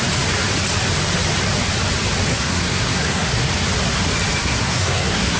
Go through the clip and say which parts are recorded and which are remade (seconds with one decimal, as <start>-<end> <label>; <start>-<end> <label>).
0.0-2.3 recorded; 2.3-3.5 remade; 3.5-4.4 recorded; 4.4-5.4 remade